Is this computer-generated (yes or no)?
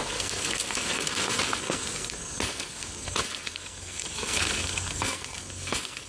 yes